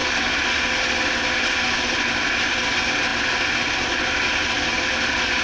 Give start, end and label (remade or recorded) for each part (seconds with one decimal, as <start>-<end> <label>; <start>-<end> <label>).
0.0-5.4 recorded